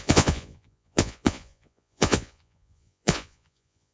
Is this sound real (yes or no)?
no